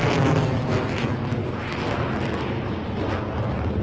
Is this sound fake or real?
real